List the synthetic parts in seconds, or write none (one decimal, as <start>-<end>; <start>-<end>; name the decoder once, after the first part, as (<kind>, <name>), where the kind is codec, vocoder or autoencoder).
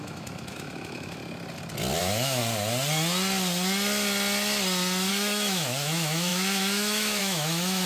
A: 0.0-1.2 (autoencoder, DAC-VAE); 2.0-2.4; 5.1-7.9